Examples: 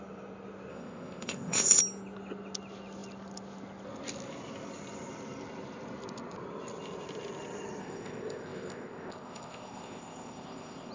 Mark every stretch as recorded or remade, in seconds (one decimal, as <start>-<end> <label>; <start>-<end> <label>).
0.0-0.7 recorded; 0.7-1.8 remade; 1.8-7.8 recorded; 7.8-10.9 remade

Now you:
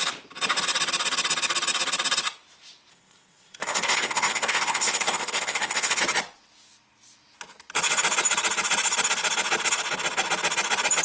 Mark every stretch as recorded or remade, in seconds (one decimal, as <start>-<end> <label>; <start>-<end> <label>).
0.0-2.9 recorded; 2.9-6.0 remade; 6.0-11.0 recorded

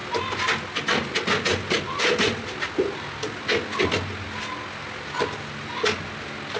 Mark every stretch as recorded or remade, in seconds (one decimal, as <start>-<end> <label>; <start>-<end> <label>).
0.0-6.6 recorded